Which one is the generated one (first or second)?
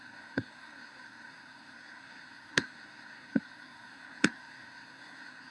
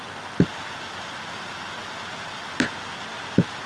first